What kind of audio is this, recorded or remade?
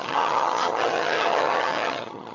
remade